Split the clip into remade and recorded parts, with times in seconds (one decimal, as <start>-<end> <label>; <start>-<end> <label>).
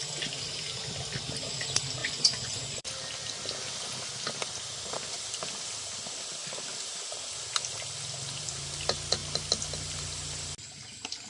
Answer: 0.0-2.0 recorded; 2.0-2.9 remade; 2.9-11.3 recorded